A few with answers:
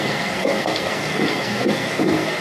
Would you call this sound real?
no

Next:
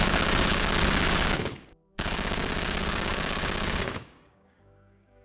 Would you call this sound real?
no